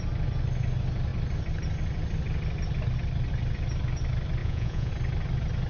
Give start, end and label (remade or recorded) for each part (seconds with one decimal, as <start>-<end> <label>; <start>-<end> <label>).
0.0-4.4 recorded; 4.4-4.9 remade; 4.9-5.7 recorded